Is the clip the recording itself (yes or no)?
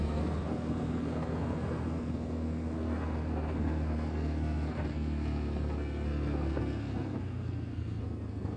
no